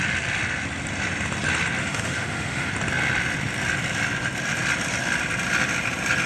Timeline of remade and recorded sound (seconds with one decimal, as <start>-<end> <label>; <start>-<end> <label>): 0.0-1.8 recorded; 1.8-2.7 remade; 2.7-6.3 recorded